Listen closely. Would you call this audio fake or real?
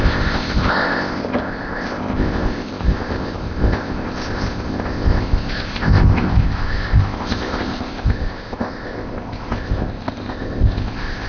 fake